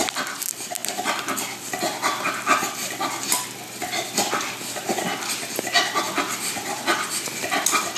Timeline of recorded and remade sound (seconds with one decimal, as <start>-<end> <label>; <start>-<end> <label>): 0.0-8.0 recorded